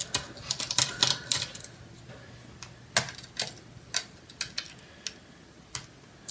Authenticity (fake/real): real